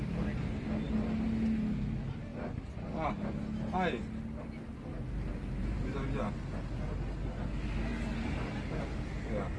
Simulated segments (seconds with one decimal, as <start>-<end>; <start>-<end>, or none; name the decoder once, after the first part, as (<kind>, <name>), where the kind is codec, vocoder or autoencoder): 5.3-6.3 (vocoder, BigVGAN v2)